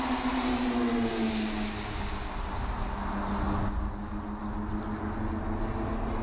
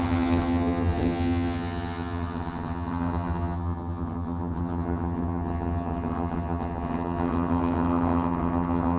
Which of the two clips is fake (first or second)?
second